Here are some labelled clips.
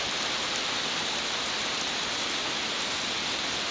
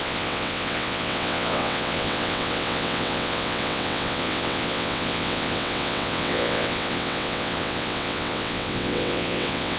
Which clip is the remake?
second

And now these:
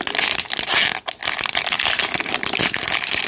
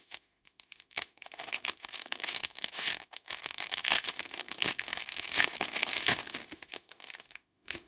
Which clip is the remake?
second